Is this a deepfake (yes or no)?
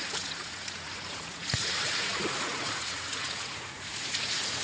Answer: yes